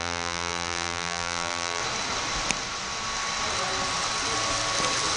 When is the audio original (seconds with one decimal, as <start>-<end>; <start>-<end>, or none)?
1.8-5.2